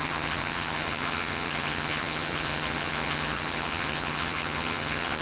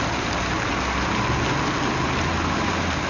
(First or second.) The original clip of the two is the second